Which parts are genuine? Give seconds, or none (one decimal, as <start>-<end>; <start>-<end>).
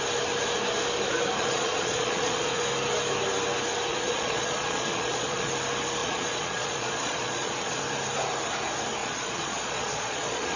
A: 0.0-1.4; 2.6-3.9; 5.5-6.0; 7.8-9.0